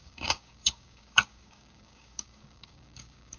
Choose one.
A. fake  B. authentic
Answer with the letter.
A